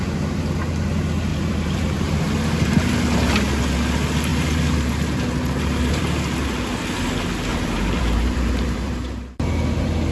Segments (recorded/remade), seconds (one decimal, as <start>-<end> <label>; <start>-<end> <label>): 0.0-1.3 recorded; 1.3-2.2 remade; 2.2-4.3 recorded; 4.3-6.0 remade; 6.0-7.5 recorded; 7.5-10.1 remade